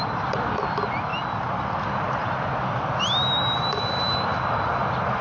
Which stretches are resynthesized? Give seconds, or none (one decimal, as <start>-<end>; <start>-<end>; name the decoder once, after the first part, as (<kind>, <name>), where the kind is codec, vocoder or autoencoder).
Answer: none